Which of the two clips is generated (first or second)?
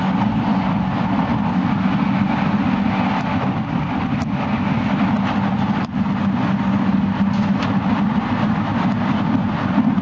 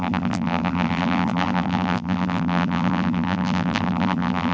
second